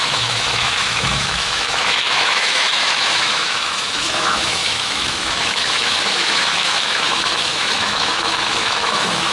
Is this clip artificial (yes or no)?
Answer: yes